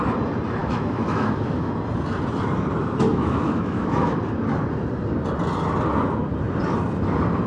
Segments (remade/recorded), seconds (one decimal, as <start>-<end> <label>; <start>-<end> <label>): 0.0-0.6 recorded; 0.6-1.7 remade; 1.7-3.1 recorded; 3.1-4.2 remade; 4.2-7.5 recorded